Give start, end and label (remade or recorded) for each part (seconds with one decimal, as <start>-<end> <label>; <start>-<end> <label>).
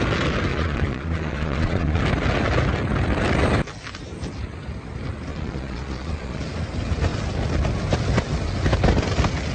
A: 0.0-0.5 recorded; 0.5-2.0 remade; 2.0-5.3 recorded; 5.3-6.4 remade; 6.4-9.5 recorded